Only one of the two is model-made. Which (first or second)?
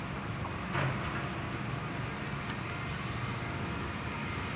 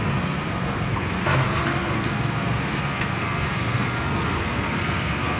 second